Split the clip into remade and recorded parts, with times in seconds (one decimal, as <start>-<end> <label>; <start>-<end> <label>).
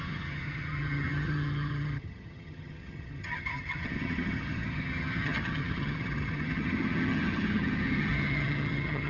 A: 0.0-9.1 remade